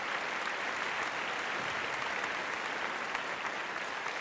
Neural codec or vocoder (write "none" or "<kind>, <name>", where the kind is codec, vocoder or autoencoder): none